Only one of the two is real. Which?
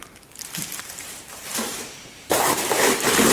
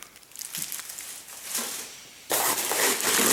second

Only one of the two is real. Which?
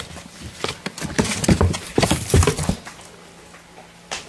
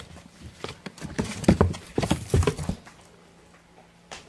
first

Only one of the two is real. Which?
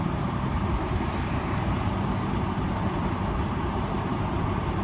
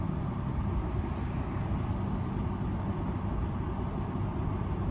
second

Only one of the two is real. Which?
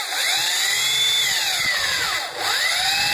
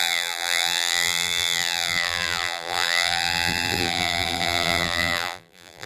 first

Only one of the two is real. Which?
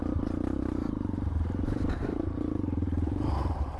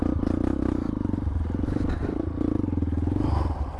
second